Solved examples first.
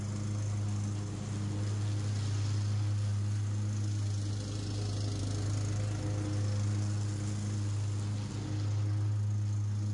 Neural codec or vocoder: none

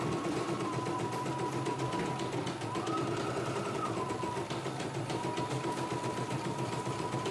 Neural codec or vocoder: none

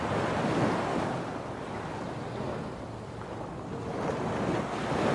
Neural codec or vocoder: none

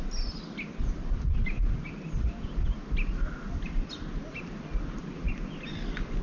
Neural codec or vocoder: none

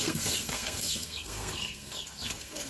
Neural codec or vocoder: codec, SNAC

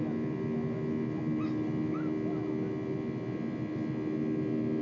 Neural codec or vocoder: none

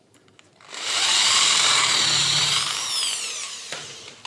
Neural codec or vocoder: vocoder, BigVGAN v2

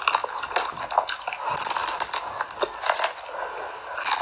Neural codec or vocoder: none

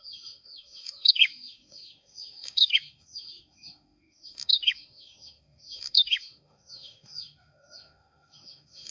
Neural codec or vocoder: autoencoder, DAC-VAE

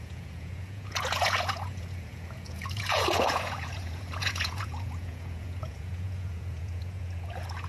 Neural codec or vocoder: vocoder, Vocos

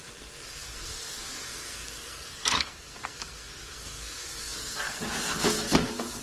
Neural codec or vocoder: codec, SNAC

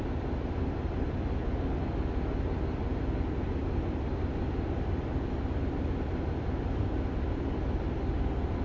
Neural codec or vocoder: none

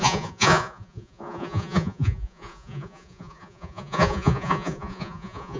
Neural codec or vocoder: vocoder, Vocos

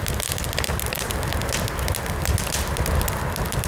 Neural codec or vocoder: none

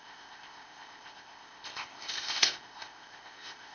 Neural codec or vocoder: codec, ZipCodec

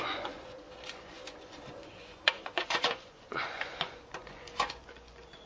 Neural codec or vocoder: vocoder, Vocos